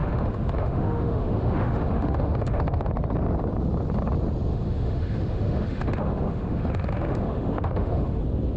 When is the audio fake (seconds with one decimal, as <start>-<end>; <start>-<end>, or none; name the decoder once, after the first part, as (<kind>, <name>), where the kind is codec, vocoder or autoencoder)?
0.0-2.9 (autoencoder, DAC-VAE); 4.5-8.2